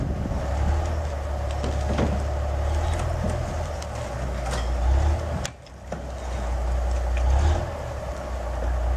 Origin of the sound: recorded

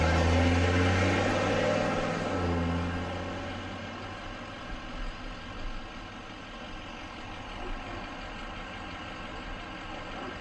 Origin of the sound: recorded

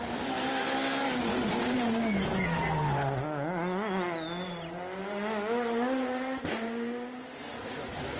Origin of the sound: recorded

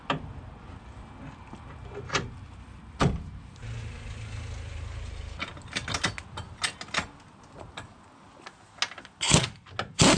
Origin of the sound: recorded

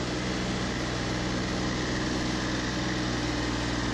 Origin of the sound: recorded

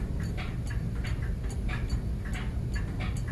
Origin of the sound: recorded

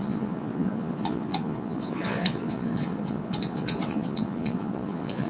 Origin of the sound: remade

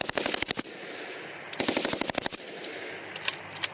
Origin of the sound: recorded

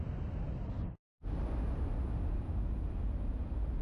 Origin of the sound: recorded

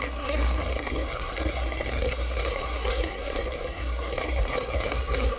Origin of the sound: remade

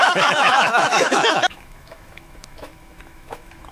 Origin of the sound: remade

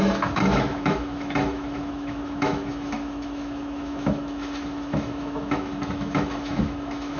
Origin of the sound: remade